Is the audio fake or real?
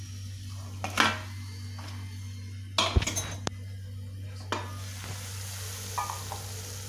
real